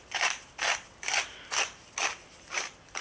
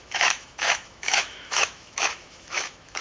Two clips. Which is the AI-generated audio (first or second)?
second